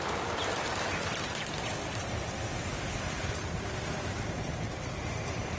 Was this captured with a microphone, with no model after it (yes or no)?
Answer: no